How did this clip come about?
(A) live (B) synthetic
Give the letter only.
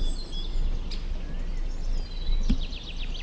A